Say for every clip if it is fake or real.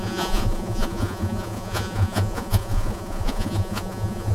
fake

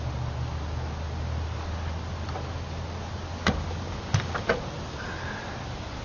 real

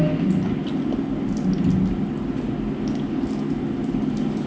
real